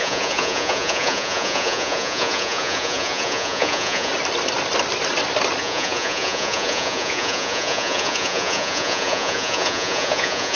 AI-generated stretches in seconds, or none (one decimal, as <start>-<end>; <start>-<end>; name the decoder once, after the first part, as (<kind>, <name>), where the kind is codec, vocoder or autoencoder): 0.0-4.1 (vocoder, Vocos); 5.6-10.6